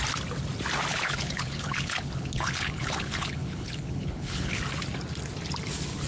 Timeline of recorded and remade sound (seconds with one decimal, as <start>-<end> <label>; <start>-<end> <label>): 0.0-0.9 recorded; 0.9-4.6 remade; 4.6-6.1 recorded